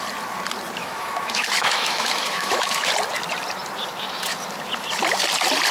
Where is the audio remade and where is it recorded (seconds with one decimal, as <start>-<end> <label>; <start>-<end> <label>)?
0.0-0.8 recorded; 0.8-2.9 remade; 2.9-5.7 recorded